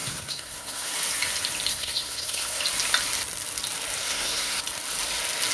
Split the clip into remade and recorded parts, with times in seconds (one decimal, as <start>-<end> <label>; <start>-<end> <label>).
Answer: 0.0-0.9 remade; 0.9-1.7 recorded; 1.7-2.6 remade; 2.6-4.0 recorded; 4.0-4.6 remade; 4.6-5.5 recorded